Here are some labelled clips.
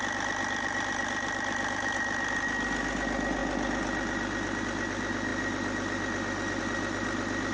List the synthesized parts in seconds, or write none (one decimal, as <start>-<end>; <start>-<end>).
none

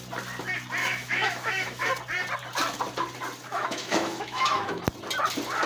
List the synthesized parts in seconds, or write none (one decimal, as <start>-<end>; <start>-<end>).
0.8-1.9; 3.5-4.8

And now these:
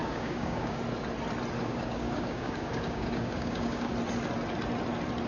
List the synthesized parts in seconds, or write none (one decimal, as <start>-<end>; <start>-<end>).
0.0-0.8; 1.6-3.9

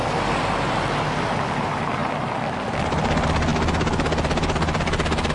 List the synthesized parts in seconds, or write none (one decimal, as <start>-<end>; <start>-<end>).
none